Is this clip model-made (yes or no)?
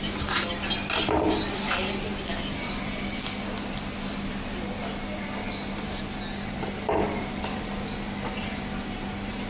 no